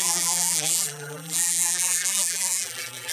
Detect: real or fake fake